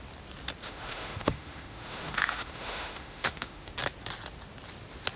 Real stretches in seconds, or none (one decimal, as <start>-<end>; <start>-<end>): 0.0-0.6; 3.7-5.2